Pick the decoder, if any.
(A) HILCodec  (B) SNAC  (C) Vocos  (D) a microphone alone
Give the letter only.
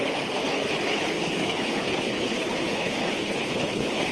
A